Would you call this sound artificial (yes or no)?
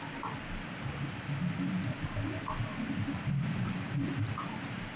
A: no